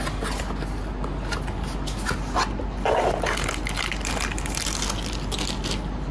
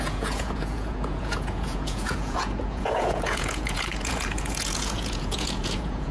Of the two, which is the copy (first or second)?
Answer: second